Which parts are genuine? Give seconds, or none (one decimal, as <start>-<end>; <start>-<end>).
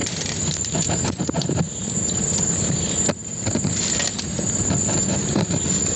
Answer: 1.2-6.0